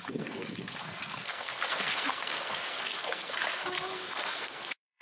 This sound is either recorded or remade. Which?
remade